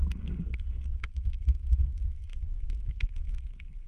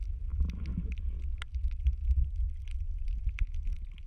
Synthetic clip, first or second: first